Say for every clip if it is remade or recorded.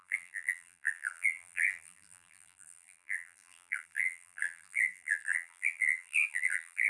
remade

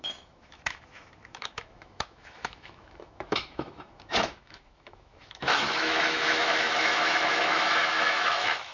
remade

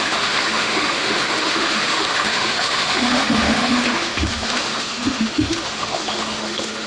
remade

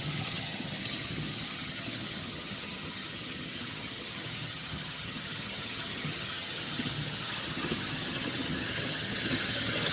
remade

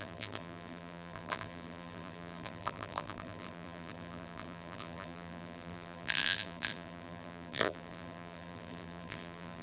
remade